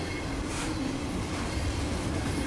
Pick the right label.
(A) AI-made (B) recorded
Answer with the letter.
B